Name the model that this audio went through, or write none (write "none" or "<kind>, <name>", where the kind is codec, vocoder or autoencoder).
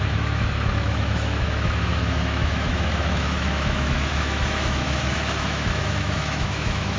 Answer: autoencoder, DAC-VAE